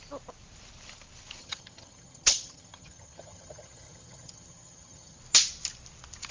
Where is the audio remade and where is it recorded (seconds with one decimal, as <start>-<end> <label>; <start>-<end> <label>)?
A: 0.0-1.4 recorded; 1.4-5.2 remade; 5.2-6.3 recorded